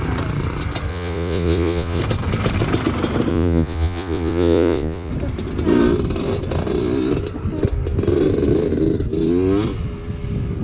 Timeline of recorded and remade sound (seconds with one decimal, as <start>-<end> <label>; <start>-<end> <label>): 0.0-0.9 recorded; 0.9-2.0 remade; 2.0-3.3 recorded; 3.3-5.1 remade; 5.1-10.6 recorded